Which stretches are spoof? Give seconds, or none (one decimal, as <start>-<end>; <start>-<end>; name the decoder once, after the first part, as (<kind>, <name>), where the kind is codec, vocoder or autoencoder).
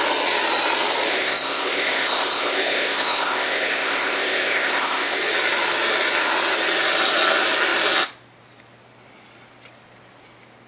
1.1-5.2 (codec, ZipCodec)